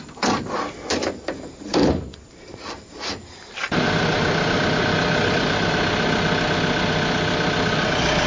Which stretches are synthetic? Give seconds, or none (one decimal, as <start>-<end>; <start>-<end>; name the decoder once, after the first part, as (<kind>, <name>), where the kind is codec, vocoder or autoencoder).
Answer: 1.0-5.7 (vocoder, BigVGAN v2)